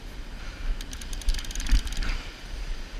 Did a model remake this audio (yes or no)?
no